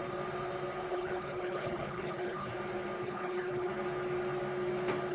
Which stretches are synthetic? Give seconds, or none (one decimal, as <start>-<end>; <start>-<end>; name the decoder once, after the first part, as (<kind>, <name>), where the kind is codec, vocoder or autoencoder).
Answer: 0.9-2.5 (codec, HILCodec); 3.0-3.7